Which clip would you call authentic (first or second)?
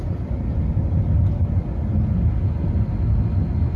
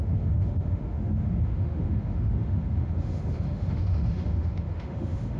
first